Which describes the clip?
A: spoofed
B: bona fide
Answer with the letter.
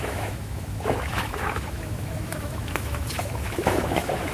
A